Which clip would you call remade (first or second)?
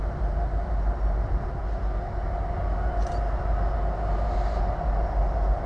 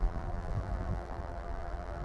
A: second